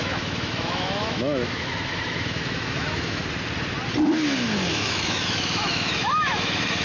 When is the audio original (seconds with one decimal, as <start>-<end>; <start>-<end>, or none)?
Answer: 3.2-4.7